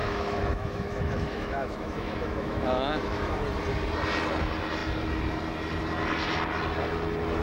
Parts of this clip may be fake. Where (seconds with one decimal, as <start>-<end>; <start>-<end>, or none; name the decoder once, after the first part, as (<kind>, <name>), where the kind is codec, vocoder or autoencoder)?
0.0-3.3 (autoencoder, DAC-VAE)